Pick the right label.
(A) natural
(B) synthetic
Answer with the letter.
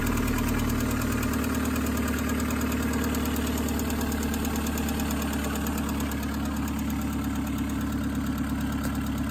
A